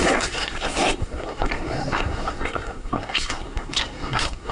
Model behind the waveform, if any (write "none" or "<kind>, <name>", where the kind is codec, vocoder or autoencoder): codec, SNAC